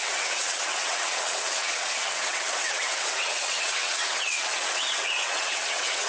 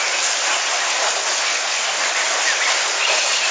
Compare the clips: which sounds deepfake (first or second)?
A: first